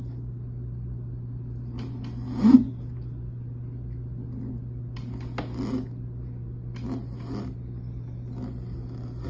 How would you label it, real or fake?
real